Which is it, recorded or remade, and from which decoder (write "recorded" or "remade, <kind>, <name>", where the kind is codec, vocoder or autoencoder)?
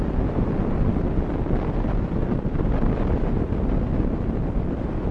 recorded